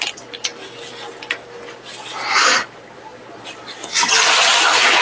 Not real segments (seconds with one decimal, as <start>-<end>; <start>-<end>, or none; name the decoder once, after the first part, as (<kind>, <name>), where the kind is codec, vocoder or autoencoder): none